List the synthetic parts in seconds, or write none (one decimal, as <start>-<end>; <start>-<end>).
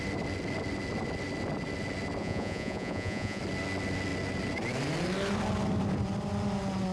2.2-3.4